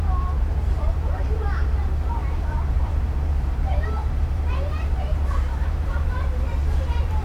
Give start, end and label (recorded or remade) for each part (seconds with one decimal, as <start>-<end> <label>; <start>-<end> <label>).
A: 0.0-7.2 remade